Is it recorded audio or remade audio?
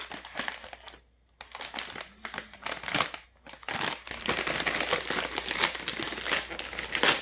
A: recorded